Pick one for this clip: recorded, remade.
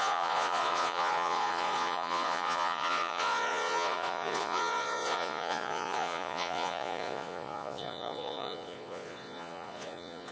remade